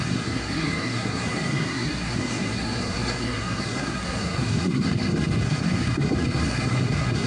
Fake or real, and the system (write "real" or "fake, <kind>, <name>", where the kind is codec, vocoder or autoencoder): fake, codec, SNAC